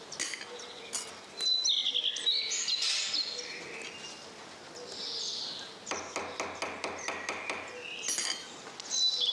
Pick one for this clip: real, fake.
real